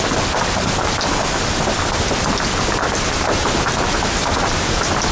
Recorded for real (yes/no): yes